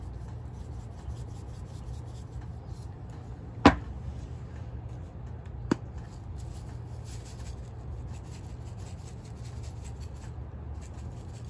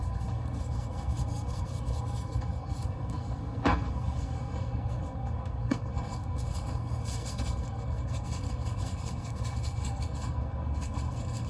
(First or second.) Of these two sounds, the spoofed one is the second